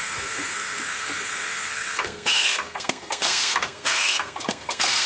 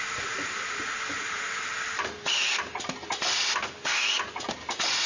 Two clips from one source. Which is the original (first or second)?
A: second